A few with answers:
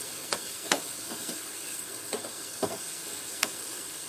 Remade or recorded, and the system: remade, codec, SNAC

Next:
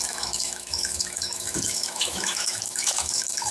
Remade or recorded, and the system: remade, autoencoder, DAC-VAE